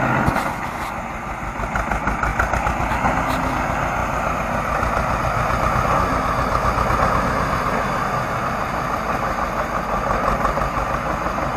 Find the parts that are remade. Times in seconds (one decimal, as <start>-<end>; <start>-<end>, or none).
none